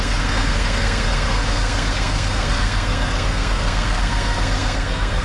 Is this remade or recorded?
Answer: remade